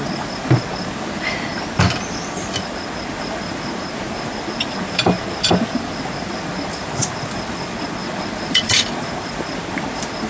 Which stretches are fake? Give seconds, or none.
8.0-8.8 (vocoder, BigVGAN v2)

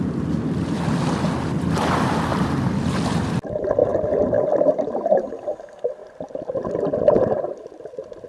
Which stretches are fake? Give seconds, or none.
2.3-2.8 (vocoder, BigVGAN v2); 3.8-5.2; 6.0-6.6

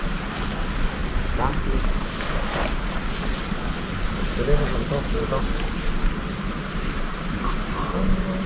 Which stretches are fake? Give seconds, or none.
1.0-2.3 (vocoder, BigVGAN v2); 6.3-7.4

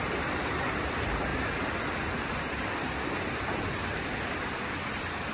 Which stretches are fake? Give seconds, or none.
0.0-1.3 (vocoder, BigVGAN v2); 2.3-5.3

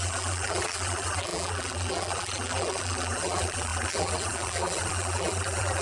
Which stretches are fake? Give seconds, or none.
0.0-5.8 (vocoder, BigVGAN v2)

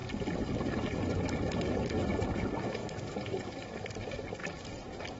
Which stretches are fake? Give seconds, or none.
2.8-3.8 (vocoder, BigVGAN v2); 4.4-5.2